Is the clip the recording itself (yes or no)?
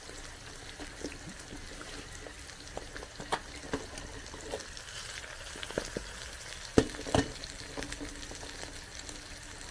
yes